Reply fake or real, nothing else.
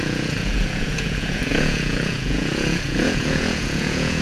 fake